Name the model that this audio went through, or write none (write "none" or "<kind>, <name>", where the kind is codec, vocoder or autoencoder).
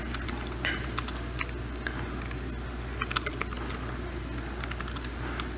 none